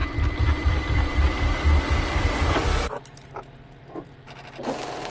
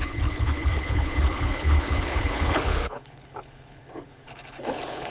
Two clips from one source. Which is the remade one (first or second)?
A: second